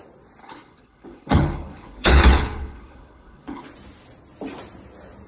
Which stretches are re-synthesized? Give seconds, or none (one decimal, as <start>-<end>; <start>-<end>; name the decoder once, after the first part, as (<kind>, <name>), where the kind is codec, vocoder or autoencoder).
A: 0.4-3.6 (codec, HILCodec)